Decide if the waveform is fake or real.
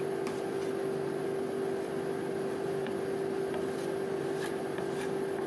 real